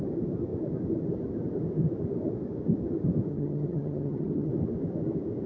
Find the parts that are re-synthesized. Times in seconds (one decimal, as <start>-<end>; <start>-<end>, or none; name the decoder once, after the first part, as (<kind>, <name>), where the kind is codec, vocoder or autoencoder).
3.3-4.5 (vocoder, HiFi-GAN)